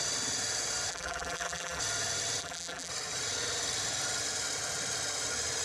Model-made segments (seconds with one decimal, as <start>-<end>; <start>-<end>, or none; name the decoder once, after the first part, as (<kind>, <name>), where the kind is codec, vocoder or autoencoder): 0.9-1.8 (vocoder, BigVGAN v2); 2.4-2.9